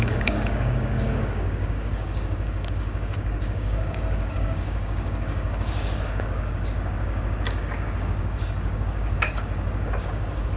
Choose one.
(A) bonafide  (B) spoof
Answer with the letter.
B